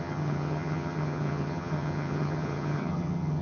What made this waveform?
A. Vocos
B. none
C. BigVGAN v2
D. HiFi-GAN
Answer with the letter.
D